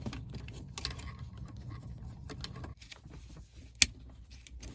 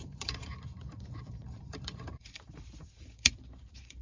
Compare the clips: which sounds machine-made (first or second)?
second